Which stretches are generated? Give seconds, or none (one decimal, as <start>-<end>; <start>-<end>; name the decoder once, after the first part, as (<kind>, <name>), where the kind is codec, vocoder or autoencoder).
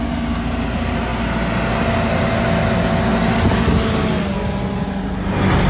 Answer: none